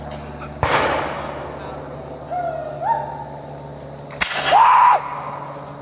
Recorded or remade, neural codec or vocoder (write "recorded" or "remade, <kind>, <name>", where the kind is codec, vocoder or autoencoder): recorded